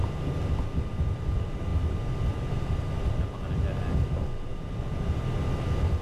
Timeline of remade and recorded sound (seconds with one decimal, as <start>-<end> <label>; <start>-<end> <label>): 0.0-6.0 recorded

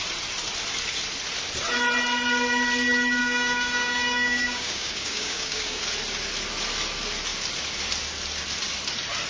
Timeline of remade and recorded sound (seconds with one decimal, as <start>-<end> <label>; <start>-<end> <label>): 0.0-3.2 recorded; 3.2-5.8 remade; 5.8-9.3 recorded

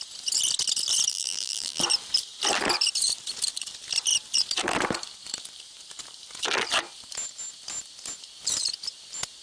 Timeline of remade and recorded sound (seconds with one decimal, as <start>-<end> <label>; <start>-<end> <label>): 0.0-1.1 recorded; 1.1-1.8 remade; 1.8-9.4 recorded

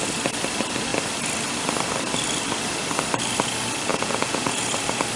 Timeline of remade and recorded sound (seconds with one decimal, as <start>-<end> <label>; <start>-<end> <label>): 0.0-3.9 recorded; 3.9-4.7 remade; 4.7-5.2 recorded

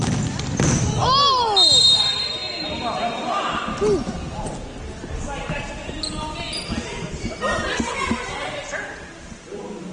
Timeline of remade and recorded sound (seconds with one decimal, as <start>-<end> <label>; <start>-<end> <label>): 0.0-9.9 recorded